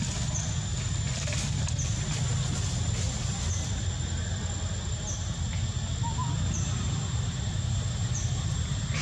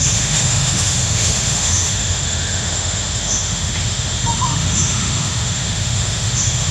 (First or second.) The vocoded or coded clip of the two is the second